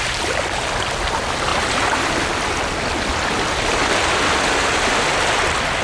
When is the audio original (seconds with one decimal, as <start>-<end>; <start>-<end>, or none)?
0.0-5.8